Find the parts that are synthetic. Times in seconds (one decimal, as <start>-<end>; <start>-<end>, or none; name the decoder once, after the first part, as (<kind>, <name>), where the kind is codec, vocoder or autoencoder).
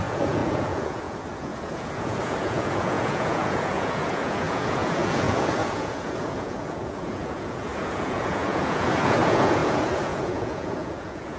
0.0-11.4 (vocoder, Vocos)